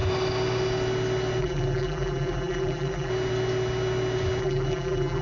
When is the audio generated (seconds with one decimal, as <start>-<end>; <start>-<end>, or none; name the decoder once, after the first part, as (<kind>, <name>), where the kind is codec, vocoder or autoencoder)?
1.4-3.1 (vocoder, BigVGAN v2); 4.4-5.2